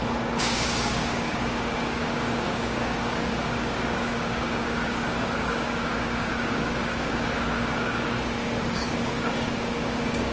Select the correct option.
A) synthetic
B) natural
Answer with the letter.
A